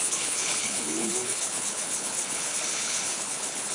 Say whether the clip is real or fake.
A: fake